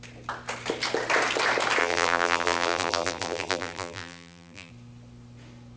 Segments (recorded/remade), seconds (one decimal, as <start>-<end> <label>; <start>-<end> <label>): 0.0-1.8 recorded; 1.8-4.7 remade; 4.7-5.8 recorded